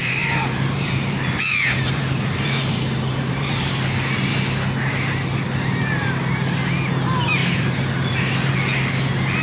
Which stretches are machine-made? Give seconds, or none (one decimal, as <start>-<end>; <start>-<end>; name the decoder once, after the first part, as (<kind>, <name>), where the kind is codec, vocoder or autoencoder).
0.0-3.7 (vocoder, BigVGAN v2); 7.4-8.5